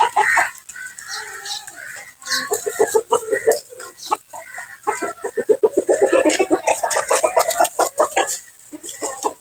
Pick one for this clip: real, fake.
real